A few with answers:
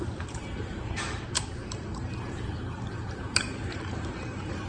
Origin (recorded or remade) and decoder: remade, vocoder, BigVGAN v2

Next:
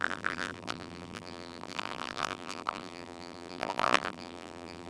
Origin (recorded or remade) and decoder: remade, vocoder, BigVGAN v2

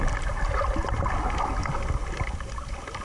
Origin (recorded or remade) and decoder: recorded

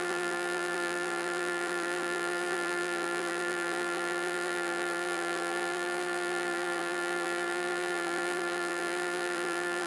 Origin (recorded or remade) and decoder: remade, vocoder, BigVGAN v2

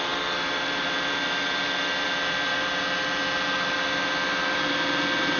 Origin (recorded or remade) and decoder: recorded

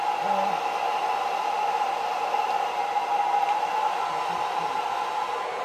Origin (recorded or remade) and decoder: recorded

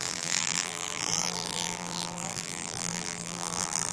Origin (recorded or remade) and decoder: remade, vocoder, BigVGAN v2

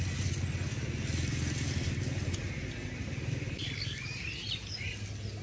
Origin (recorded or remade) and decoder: recorded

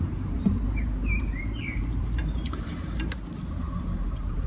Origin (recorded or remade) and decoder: remade, vocoder, BigVGAN v2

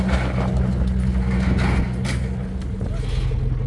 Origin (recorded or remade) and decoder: recorded